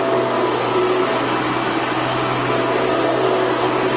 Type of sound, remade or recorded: recorded